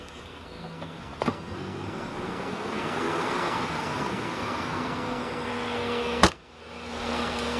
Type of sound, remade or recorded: remade